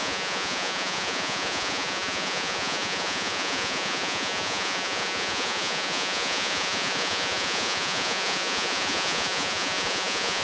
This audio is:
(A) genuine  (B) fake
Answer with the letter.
B